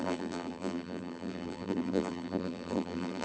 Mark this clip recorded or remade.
remade